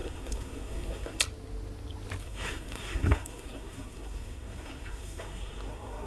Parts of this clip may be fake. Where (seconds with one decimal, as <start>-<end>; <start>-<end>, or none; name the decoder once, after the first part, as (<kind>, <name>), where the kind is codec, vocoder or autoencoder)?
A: 0.0-1.2 (codec, SNAC); 2.2-6.1